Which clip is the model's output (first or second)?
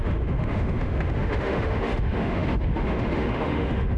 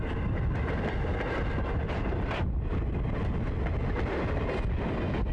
first